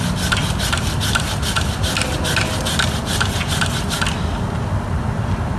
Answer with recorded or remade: recorded